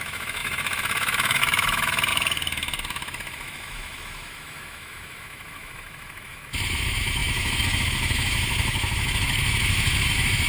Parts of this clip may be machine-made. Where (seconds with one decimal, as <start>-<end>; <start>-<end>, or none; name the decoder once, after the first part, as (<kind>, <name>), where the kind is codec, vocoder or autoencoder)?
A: 0.0-10.5 (autoencoder, DAC-VAE)